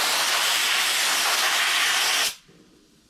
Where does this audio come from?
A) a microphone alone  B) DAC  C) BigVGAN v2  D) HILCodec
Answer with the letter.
C